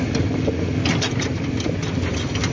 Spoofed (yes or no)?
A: no